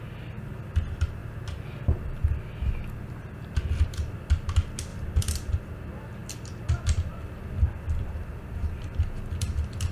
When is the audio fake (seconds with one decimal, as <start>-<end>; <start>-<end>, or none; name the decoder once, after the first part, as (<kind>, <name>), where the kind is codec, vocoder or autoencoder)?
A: 4.9-5.5 (vocoder, BigVGAN v2)